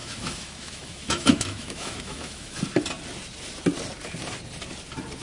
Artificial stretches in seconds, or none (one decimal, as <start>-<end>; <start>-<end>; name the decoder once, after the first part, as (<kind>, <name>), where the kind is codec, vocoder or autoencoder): 0.0-2.6 (autoencoder, DAC-VAE)